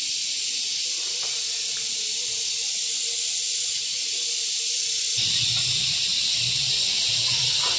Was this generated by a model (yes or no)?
no